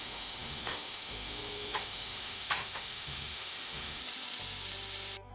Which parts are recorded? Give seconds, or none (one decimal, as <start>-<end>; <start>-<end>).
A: 4.0-5.3